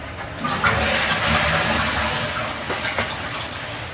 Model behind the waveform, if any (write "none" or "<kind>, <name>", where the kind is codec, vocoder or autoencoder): none